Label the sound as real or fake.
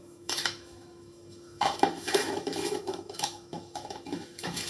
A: fake